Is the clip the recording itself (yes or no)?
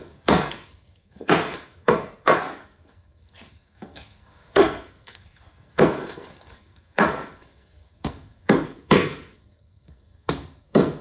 no